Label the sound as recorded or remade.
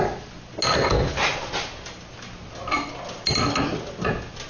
recorded